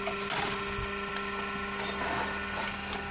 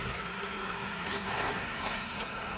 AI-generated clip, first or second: second